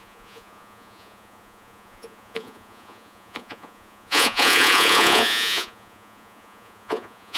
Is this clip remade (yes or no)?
yes